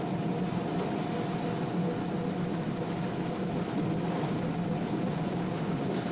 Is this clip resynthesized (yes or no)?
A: no